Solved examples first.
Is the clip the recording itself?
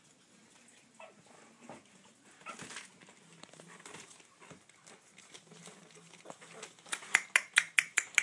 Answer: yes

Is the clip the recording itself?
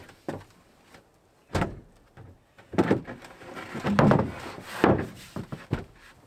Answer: yes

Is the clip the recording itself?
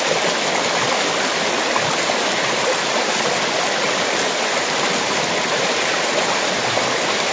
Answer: yes